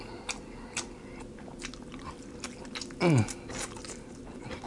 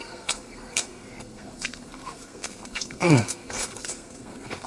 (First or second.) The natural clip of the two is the first